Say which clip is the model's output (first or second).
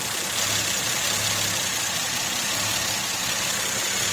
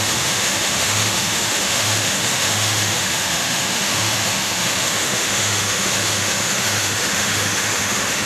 second